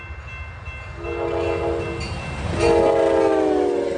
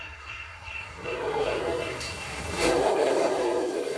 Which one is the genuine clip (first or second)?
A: first